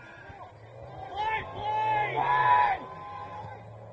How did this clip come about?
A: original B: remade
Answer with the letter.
A